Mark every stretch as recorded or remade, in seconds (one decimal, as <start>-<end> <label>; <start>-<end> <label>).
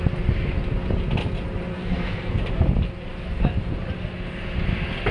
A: 0.0-1.7 recorded; 1.7-2.5 remade; 2.5-5.1 recorded